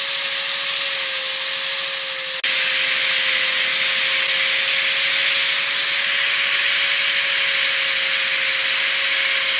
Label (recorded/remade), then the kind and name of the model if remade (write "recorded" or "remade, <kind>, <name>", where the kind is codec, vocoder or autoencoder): recorded